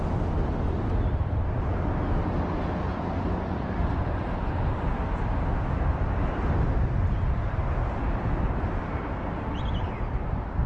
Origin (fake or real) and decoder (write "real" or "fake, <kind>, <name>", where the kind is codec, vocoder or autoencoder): real